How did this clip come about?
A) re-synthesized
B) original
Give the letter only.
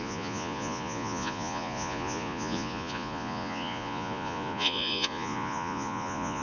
A